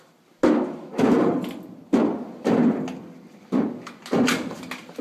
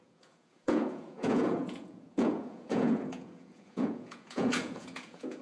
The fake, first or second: second